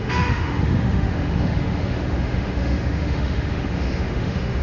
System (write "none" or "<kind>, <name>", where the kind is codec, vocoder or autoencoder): autoencoder, DAC-VAE